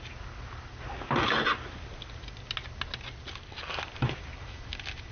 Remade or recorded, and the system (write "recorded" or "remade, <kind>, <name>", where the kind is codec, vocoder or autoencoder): recorded